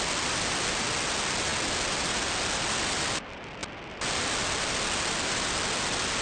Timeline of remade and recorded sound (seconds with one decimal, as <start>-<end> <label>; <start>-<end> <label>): 0.0-6.2 recorded